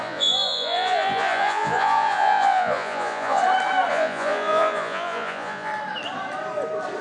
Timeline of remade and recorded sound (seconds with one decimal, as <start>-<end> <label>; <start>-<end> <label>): 0.0-3.4 remade; 3.4-3.9 recorded; 3.9-5.7 remade; 5.7-7.0 recorded